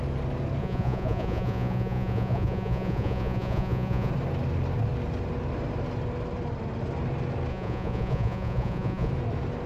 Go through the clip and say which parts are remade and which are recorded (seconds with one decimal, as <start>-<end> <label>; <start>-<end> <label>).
0.0-0.6 recorded; 0.6-4.1 remade; 4.1-7.5 recorded; 7.5-9.1 remade; 9.1-9.7 recorded